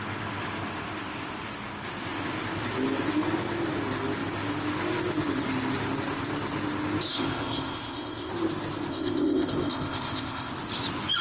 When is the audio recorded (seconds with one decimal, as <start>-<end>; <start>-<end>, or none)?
0.0-7.1; 8.3-8.9; 10.5-11.2

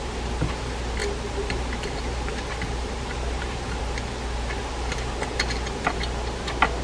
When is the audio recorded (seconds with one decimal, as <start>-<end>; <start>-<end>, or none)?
0.0-1.0; 3.8-4.6; 5.1-6.8

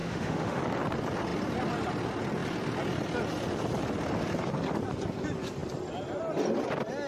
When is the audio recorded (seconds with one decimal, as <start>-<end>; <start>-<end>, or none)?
0.6-7.1

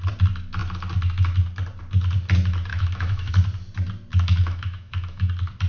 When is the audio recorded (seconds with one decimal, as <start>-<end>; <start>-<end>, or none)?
0.0-2.7; 3.3-4.1; 5.3-5.7

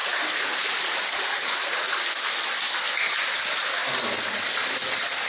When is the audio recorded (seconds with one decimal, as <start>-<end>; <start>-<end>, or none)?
0.0-5.3

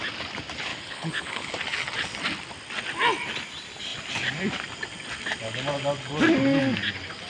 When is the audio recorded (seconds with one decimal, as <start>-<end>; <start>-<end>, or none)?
0.0-0.7; 1.5-7.3

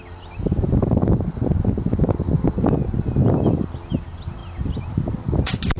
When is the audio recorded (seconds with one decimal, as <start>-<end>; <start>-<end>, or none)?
0.0-5.8

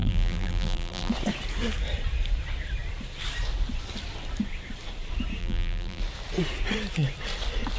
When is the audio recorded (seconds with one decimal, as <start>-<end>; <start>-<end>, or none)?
1.1-5.4; 6.0-7.8